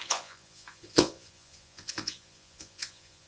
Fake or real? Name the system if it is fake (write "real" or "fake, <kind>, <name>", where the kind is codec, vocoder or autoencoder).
fake, vocoder, Vocos